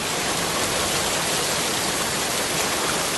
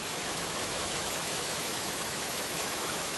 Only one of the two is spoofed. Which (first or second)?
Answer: second